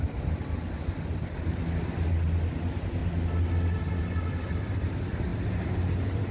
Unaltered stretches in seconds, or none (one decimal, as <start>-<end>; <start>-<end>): 0.0-6.3